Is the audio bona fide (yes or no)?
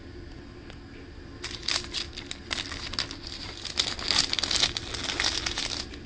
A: yes